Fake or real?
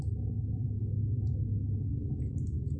real